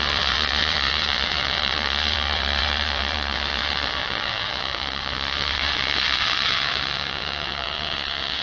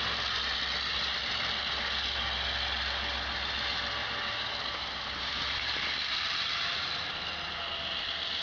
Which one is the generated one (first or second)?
first